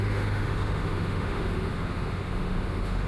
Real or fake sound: fake